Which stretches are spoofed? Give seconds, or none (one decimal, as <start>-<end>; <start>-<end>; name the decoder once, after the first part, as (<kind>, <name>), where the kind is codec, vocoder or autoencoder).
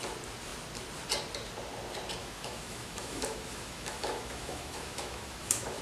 2.2-5.8 (autoencoder, DAC-VAE)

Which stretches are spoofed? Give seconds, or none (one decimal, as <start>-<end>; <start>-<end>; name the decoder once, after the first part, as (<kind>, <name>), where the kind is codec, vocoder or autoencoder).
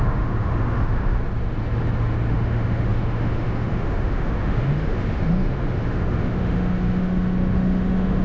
0.0-1.2 (autoencoder, DAC-VAE); 2.3-8.2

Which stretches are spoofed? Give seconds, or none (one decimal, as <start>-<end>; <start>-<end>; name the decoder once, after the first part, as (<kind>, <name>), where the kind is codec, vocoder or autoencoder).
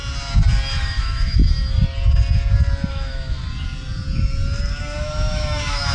0.8-1.4 (autoencoder, DAC-VAE); 2.9-3.4; 4.8-5.9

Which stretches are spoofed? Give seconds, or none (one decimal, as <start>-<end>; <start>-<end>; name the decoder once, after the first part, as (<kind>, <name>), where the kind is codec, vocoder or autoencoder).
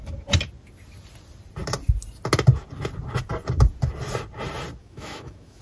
4.8-5.6 (autoencoder, DAC-VAE)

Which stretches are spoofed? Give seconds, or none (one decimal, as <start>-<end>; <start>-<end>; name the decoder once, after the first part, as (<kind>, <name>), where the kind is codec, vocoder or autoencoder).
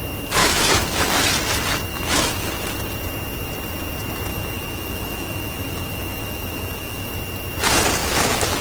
0.4-1.3 (autoencoder, DAC-VAE); 1.9-2.5; 4.3-7.1; 8.0-8.6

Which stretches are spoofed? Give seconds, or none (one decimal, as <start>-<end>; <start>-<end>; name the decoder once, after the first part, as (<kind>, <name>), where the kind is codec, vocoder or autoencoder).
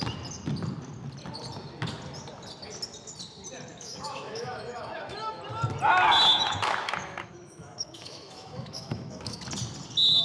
3.7-5.4 (autoencoder, DAC-VAE); 6.3-9.4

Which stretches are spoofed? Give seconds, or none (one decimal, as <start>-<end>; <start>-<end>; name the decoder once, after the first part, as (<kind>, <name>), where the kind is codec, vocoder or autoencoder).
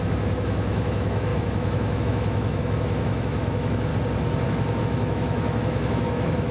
0.0-3.9 (autoencoder, DAC-VAE); 4.8-6.5